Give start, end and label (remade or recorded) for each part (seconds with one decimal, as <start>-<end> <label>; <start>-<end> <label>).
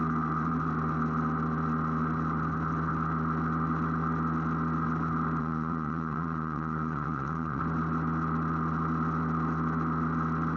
0.0-5.4 recorded; 5.4-7.6 remade; 7.6-10.6 recorded